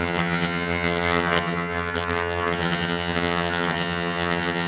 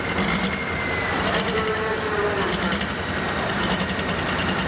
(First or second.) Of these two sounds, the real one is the second